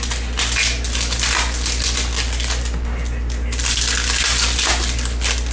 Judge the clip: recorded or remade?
recorded